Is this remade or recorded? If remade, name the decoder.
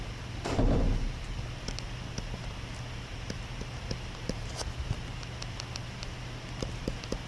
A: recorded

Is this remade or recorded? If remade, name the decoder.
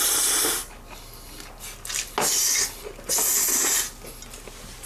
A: recorded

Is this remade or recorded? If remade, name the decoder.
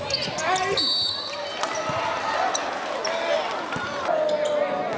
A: recorded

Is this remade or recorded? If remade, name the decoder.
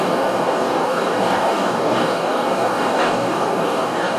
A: remade, codec, DAC